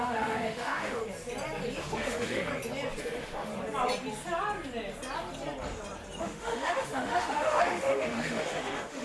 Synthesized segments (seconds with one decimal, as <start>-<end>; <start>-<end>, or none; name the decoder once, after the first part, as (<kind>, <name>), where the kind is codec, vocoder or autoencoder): 0.0-1.0 (autoencoder, DAC-VAE); 1.8-2.5; 3.0-3.5; 6.2-9.0

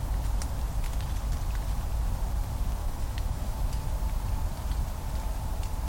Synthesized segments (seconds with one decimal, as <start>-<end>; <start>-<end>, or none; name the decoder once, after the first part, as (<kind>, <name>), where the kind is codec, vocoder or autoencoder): 2.8-3.6 (autoencoder, DAC-VAE)

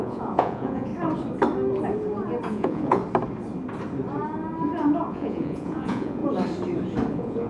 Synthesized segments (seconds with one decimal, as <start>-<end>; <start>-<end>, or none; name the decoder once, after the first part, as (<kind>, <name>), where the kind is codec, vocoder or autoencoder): 0.0-0.9 (vocoder, Vocos); 2.5-3.0; 5.1-6.2; 7.1-7.5

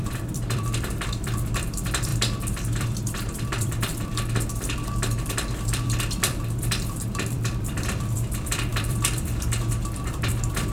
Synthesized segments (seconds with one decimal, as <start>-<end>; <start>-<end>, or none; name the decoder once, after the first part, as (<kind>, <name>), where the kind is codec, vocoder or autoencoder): 0.0-10.7 (vocoder, BigVGAN v2)

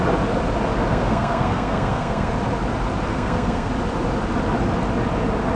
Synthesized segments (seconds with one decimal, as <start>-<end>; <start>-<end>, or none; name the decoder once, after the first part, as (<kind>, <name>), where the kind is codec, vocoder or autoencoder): 0.9-2.3 (codec, SNAC); 3.1-3.7

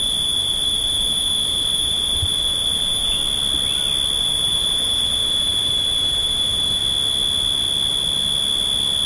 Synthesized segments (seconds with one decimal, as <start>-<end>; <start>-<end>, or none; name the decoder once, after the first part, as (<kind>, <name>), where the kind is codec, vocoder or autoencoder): 0.0-3.2 (vocoder, BigVGAN v2); 4.2-6.8

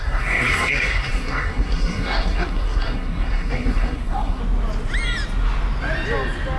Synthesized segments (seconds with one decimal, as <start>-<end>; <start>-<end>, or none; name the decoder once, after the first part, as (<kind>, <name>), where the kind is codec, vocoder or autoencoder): 0.0-4.4 (codec, SNAC)